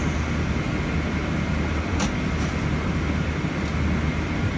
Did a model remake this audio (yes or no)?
no